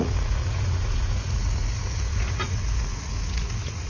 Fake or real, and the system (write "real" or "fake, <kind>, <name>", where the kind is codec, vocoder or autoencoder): fake, vocoder, Vocos